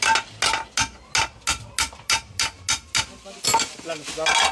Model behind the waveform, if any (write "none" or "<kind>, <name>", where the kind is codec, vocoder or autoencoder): none